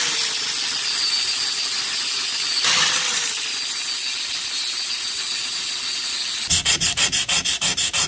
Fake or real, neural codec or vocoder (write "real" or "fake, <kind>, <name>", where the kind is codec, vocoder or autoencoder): real